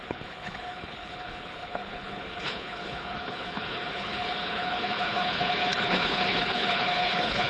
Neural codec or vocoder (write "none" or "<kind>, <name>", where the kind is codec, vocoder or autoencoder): codec, HILCodec